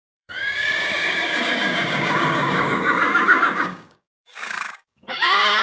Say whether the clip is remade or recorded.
remade